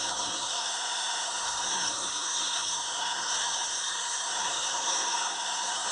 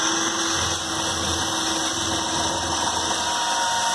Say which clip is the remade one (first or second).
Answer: first